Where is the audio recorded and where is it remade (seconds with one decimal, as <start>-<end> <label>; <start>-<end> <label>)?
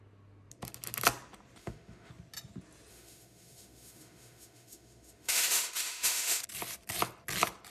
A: 0.0-1.6 recorded; 1.6-2.1 remade; 2.1-2.9 recorded; 2.9-6.4 remade; 6.4-7.7 recorded